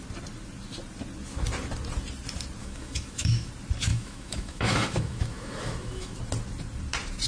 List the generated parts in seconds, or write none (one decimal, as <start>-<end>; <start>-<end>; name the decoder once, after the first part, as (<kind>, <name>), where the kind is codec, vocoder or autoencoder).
2.6-3.5 (autoencoder, DAC-VAE); 3.9-6.2